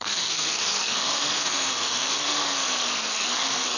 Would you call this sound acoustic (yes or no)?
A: no